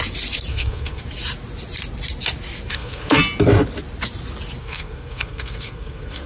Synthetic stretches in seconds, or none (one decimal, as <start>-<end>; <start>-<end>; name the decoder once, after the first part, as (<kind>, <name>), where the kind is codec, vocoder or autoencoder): 0.5-1.0 (codec, SNAC); 2.7-3.2; 4.6-6.3